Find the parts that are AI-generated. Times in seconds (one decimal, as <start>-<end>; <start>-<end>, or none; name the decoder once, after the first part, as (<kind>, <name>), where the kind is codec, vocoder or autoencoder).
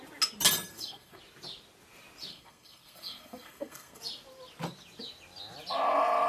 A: 0.7-1.2 (codec, SNAC); 2.3-4.0